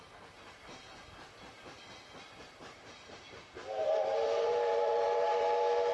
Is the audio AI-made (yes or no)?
yes